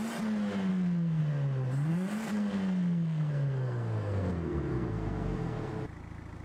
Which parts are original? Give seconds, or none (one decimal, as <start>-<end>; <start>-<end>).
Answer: 0.0-0.7; 1.2-1.9; 5.7-6.4

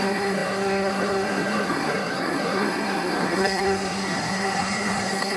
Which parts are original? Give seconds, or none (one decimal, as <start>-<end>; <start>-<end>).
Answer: none

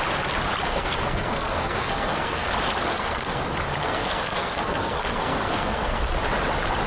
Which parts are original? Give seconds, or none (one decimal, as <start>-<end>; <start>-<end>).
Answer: 0.0-0.7; 2.5-2.9; 3.4-3.8; 6.0-6.9

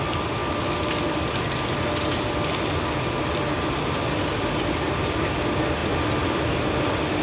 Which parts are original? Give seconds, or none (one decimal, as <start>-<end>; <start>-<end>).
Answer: 0.0-7.2

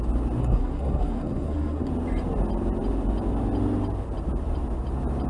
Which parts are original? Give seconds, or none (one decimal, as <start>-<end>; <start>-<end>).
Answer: 0.0-0.4; 1.9-5.3